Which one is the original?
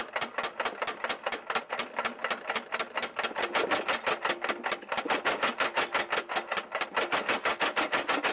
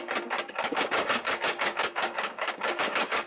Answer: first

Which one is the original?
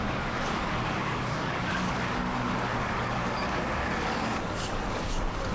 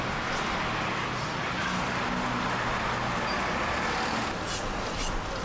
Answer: second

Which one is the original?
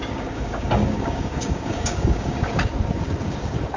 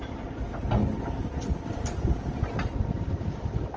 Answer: second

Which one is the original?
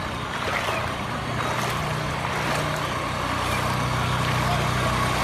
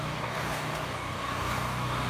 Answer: first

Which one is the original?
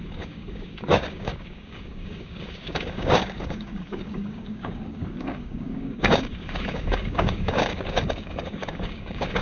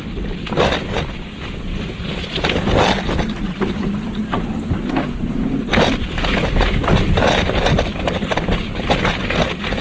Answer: second